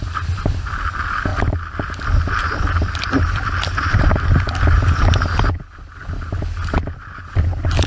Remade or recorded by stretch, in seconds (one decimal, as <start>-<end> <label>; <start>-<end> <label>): 0.0-7.9 recorded